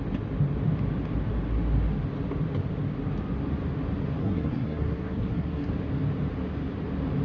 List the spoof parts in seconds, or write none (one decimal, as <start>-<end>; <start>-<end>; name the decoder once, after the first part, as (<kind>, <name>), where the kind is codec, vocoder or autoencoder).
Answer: 4.2-5.7 (codec, SNAC)